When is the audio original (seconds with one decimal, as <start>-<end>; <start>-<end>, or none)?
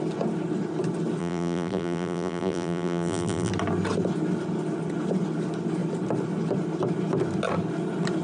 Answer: 0.0-1.2; 3.5-8.2